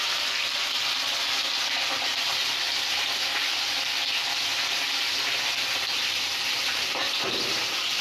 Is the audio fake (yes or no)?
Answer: no